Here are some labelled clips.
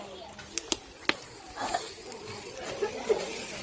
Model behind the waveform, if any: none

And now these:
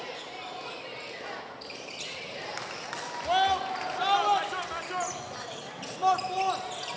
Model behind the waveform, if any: none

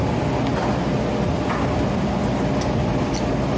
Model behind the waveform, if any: none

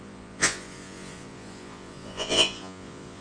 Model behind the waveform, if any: vocoder, Vocos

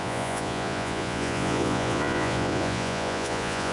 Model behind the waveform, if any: vocoder, Vocos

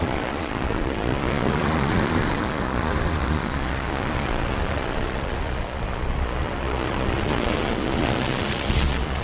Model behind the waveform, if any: vocoder, Vocos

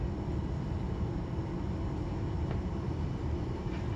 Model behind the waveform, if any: none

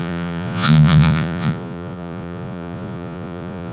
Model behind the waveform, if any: vocoder, Vocos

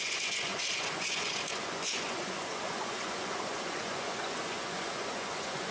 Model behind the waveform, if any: vocoder, Vocos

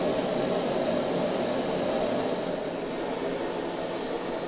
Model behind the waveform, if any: none